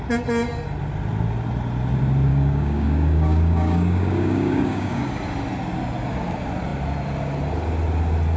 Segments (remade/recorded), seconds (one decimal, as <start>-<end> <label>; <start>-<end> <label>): 0.0-2.3 recorded; 2.3-5.0 remade; 5.0-8.4 recorded